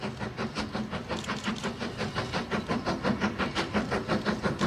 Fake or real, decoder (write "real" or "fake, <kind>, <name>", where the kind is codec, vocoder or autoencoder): real